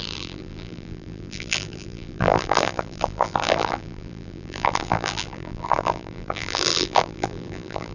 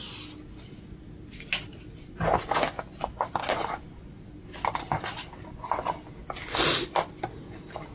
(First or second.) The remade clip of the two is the first